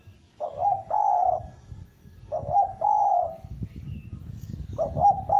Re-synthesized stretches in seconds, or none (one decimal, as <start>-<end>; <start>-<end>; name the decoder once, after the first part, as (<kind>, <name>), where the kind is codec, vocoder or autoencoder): 0.0-5.4 (codec, DAC)